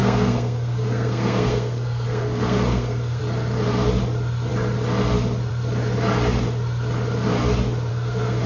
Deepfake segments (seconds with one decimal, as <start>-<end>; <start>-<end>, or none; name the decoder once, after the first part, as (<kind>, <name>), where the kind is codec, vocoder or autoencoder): 0.0-3.2 (codec, SNAC); 7.9-8.5